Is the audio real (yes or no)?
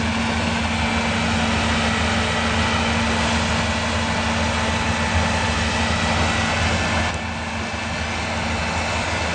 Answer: yes